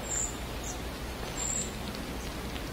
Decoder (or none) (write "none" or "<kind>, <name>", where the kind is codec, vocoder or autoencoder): none